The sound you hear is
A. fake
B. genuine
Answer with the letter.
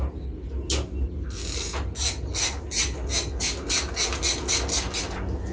B